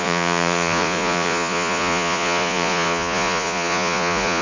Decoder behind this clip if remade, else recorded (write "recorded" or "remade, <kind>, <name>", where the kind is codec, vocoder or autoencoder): remade, vocoder, Vocos